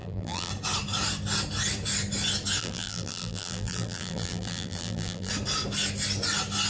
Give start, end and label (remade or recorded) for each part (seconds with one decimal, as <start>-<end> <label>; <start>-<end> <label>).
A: 0.0-0.5 remade; 0.5-2.6 recorded; 2.6-5.3 remade; 5.3-6.7 recorded